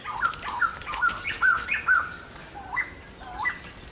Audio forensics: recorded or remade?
recorded